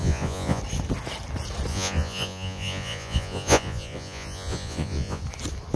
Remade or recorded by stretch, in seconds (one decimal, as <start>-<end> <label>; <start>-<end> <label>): 0.0-0.6 remade; 0.6-1.7 recorded; 1.7-5.2 remade; 5.2-5.8 recorded